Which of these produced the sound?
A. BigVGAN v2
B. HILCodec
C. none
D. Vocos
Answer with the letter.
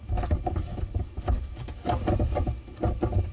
A